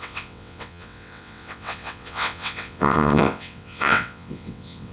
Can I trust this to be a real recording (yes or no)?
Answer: no